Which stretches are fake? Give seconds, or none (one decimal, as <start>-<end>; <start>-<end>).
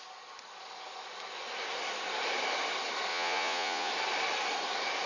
3.1-3.9